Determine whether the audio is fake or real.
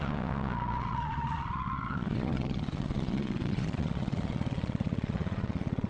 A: fake